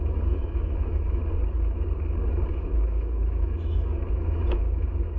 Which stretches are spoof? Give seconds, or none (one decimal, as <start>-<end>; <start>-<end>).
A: 0.0-1.2; 2.5-5.2